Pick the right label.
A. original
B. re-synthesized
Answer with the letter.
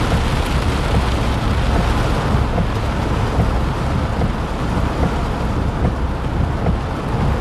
A